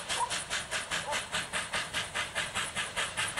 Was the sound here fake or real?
real